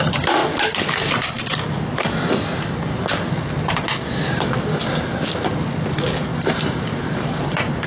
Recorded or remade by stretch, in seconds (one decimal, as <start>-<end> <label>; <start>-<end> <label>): 0.0-6.3 recorded; 6.3-7.9 remade